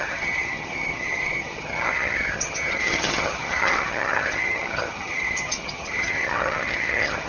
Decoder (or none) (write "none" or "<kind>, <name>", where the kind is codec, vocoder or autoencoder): vocoder, HiFi-GAN